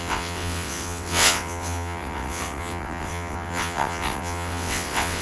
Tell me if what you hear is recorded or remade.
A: remade